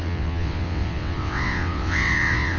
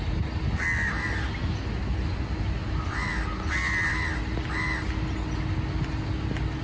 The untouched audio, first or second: second